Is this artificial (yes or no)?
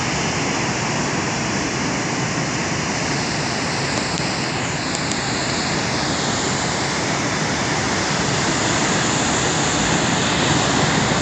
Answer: no